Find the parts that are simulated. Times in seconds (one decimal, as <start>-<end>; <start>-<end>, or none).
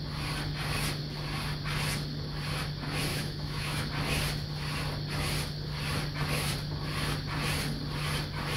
3.1-3.9